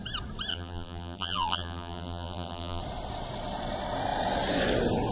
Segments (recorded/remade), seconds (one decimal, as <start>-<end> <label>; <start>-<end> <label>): 0.0-0.5 recorded; 0.5-2.8 remade; 2.8-5.1 recorded